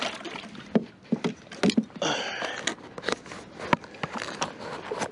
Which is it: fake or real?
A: real